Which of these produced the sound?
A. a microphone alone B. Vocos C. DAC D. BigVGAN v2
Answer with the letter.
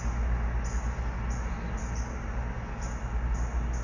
A